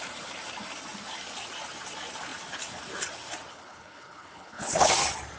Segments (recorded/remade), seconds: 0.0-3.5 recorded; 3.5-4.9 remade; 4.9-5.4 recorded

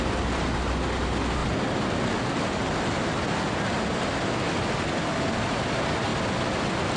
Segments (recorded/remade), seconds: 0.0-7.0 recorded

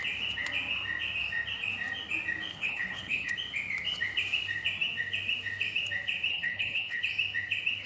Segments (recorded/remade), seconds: 0.0-2.5 recorded; 2.5-3.3 remade; 3.3-6.3 recorded; 6.3-7.0 remade; 7.0-7.9 recorded

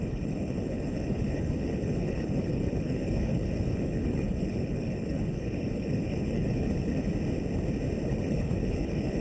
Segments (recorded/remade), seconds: 0.0-7.1 remade; 7.1-8.0 recorded; 8.0-9.2 remade

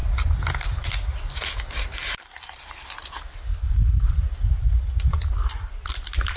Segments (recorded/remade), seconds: 0.0-3.5 recorded; 3.5-4.2 remade; 4.2-6.4 recorded

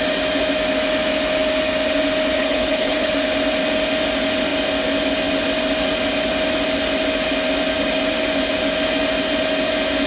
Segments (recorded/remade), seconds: 0.0-2.4 recorded; 2.4-3.1 remade; 3.1-10.1 recorded

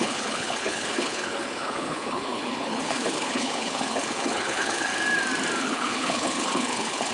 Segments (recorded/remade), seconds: 0.0-4.9 remade; 4.9-5.6 recorded; 5.6-7.1 remade

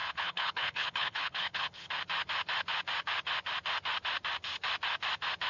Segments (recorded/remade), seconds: 0.0-1.9 remade; 1.9-5.5 recorded